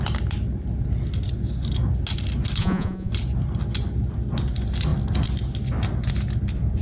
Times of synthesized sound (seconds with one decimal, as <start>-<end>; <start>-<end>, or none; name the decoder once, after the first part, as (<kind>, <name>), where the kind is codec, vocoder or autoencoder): 2.6-3.1 (vocoder, Vocos)